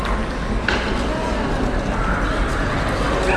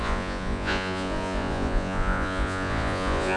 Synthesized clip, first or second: second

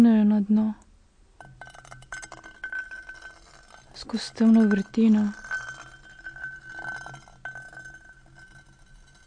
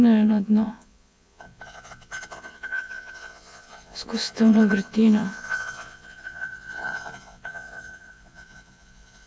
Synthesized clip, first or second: second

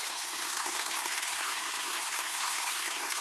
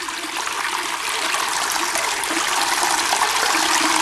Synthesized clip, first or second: first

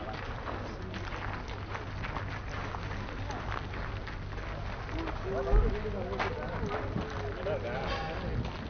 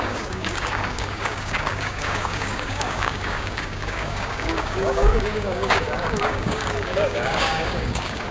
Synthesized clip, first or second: second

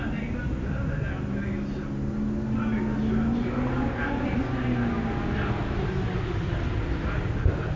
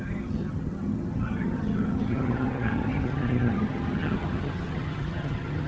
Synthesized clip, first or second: second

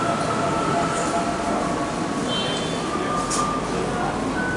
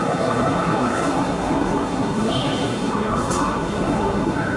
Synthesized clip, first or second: second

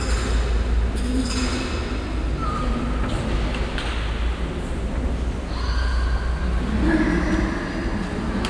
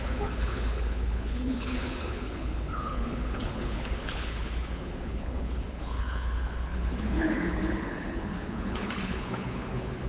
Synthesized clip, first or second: second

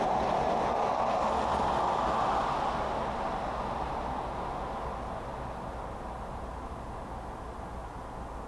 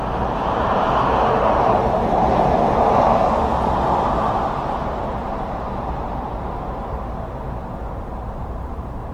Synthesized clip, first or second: second